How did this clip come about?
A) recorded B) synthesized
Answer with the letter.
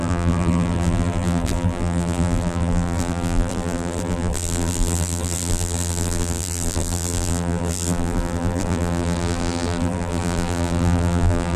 B